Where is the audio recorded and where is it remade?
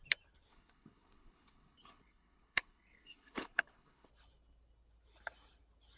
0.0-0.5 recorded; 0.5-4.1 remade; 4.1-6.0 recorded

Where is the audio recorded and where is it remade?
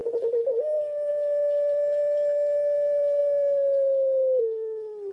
0.0-5.1 recorded